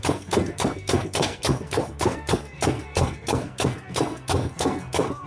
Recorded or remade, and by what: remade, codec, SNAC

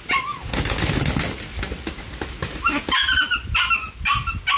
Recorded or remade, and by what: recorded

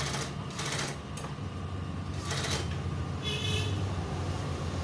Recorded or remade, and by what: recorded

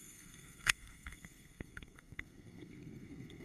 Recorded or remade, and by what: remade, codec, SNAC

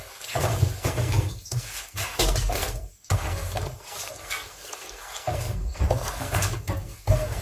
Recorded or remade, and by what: remade, codec, SNAC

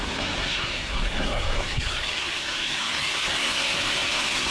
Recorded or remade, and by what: remade, codec, SNAC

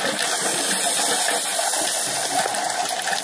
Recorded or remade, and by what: recorded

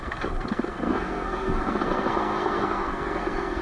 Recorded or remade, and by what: remade, codec, SNAC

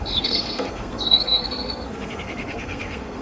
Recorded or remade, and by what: remade, codec, SNAC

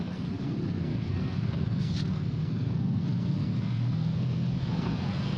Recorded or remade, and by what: remade, codec, SNAC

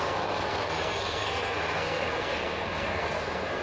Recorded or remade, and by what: remade, codec, SNAC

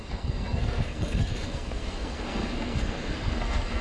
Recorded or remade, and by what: remade, codec, SNAC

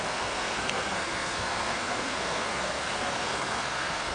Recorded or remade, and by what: remade, codec, SNAC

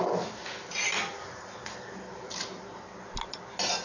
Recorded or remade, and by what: recorded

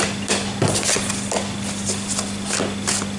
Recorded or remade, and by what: recorded